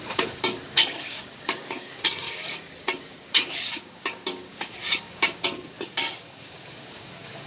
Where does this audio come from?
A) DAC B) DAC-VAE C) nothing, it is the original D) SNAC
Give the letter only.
A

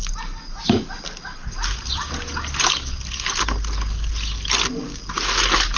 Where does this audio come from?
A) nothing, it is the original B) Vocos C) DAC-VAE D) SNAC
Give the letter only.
A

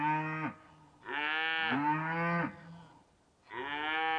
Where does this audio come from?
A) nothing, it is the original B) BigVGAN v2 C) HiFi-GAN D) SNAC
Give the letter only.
A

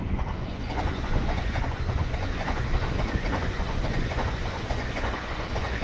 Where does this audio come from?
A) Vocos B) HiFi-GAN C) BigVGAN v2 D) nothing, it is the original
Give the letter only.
A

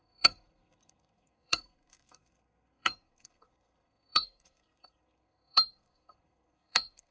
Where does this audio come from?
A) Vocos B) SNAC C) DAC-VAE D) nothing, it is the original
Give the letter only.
B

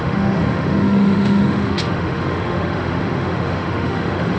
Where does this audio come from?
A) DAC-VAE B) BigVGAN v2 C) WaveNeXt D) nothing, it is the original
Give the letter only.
A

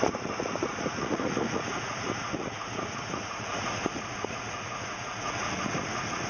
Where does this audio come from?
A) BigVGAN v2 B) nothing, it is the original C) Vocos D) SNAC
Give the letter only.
C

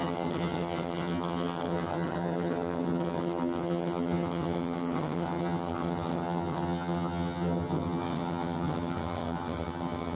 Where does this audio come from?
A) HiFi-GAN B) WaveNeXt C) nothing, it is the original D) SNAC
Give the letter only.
A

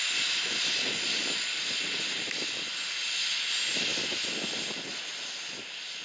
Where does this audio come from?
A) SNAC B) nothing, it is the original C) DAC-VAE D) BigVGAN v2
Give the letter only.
B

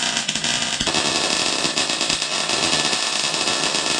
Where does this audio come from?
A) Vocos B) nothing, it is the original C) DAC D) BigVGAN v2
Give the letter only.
B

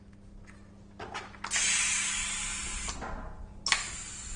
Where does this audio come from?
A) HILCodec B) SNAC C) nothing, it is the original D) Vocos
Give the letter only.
C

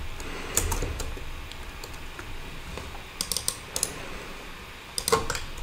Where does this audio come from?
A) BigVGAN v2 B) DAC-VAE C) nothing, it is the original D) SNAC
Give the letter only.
C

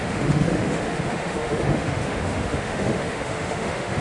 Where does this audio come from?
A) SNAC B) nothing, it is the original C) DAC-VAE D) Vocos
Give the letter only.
C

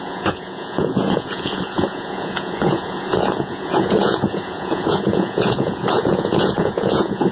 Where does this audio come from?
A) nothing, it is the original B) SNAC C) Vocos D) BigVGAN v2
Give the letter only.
C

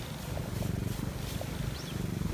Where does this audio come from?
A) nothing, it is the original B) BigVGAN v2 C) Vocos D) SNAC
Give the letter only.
A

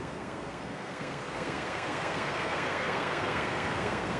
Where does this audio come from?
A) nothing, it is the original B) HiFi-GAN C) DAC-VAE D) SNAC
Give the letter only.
D